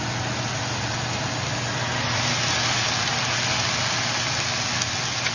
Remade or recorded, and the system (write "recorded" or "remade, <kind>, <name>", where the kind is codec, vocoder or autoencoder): recorded